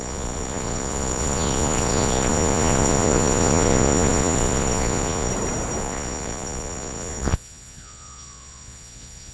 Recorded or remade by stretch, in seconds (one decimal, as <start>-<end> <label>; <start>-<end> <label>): 0.0-5.3 remade; 5.3-5.8 recorded; 5.8-9.3 remade